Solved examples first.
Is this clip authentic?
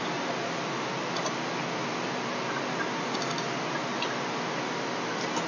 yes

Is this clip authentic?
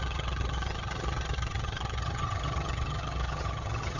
no